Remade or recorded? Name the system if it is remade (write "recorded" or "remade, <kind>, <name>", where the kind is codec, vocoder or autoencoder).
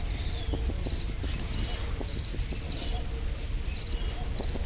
recorded